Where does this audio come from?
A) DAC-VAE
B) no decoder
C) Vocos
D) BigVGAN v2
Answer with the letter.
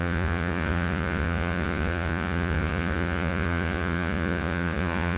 C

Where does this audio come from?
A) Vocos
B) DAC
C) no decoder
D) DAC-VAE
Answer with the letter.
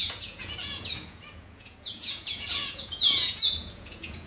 A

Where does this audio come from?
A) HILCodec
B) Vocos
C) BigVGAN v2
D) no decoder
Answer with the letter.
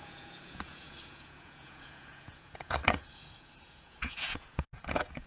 B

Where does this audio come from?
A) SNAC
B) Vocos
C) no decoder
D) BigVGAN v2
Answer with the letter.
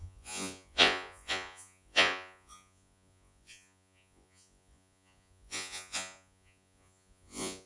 B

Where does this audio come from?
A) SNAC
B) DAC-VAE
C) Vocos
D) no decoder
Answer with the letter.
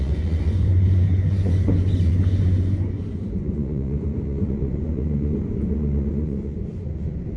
C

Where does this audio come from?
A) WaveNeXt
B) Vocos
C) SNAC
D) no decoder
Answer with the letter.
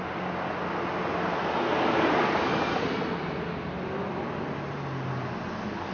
D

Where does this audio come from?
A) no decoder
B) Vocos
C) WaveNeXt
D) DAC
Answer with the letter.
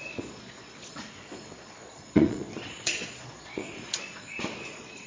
B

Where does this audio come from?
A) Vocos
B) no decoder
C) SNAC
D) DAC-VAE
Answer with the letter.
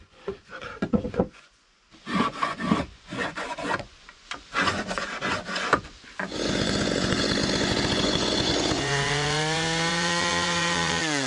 A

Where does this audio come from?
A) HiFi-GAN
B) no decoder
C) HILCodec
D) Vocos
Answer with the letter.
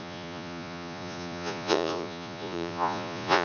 D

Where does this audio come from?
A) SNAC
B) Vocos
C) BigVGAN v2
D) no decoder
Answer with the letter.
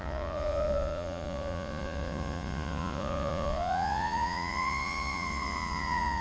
B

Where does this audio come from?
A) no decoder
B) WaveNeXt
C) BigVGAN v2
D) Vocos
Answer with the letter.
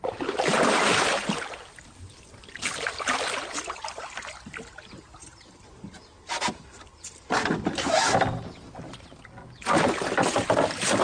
A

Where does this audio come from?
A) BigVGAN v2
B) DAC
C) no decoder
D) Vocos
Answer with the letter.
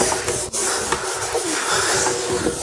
C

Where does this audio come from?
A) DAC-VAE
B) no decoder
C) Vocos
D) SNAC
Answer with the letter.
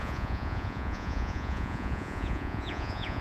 C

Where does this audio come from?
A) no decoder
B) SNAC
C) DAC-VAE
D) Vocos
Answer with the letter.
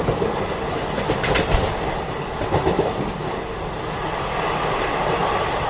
A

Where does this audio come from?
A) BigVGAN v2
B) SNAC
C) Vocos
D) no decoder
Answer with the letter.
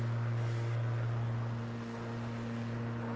D